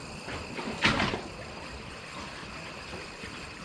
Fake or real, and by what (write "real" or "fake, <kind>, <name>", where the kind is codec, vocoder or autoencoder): real